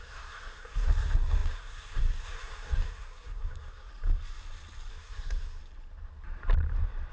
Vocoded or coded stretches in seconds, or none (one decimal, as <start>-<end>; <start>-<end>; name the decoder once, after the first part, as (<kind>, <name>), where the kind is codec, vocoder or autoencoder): 0.0-3.9 (codec, SNAC); 4.9-5.6